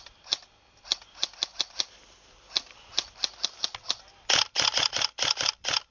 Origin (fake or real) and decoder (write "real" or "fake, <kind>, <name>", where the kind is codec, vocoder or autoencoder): real